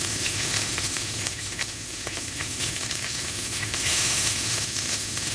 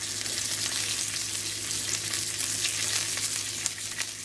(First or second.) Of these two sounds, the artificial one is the first